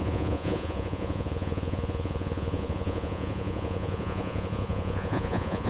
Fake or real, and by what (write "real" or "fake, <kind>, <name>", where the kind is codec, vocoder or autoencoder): fake, vocoder, Vocos